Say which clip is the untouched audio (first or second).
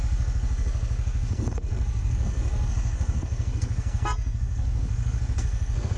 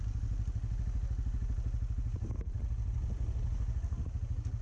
second